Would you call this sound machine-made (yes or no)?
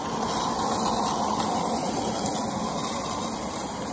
no